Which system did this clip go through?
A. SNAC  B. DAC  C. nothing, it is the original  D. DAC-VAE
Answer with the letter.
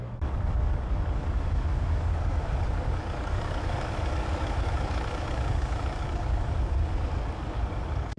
B